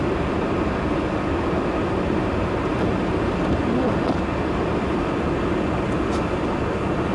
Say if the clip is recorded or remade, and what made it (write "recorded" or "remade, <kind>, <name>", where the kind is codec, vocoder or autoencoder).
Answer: recorded